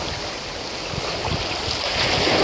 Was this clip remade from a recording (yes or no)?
no